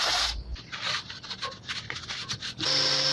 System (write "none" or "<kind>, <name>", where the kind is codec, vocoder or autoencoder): none